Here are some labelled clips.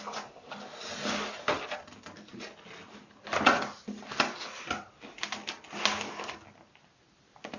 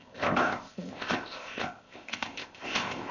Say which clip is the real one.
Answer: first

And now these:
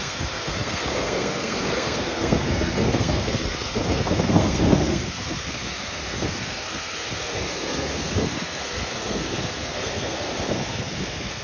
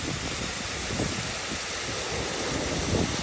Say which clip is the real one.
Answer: second